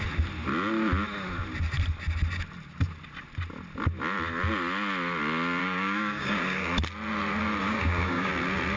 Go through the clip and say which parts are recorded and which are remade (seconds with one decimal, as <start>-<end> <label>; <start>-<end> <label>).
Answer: 0.0-5.6 recorded; 5.6-6.7 remade; 6.7-7.6 recorded; 7.6-8.3 remade; 8.3-8.8 recorded